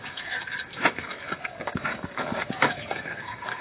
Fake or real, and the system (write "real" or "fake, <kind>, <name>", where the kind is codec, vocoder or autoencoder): fake, codec, DAC